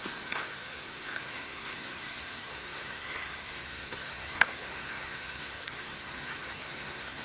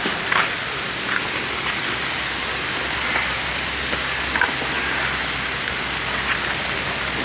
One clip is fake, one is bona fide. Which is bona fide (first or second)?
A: second